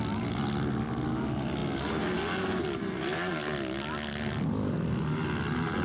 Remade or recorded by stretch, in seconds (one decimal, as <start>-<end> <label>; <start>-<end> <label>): 0.0-5.8 recorded